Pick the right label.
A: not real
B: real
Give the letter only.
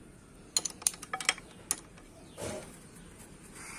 B